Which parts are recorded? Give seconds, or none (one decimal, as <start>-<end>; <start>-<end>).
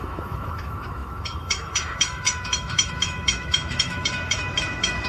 none